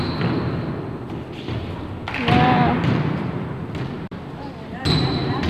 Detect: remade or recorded recorded